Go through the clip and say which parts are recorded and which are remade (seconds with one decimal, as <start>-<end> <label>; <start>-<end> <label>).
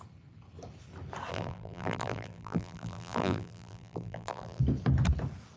0.0-1.3 recorded; 1.3-4.6 remade; 4.6-5.6 recorded